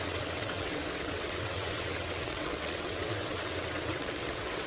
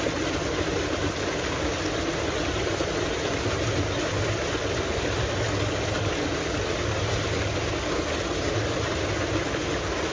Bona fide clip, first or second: second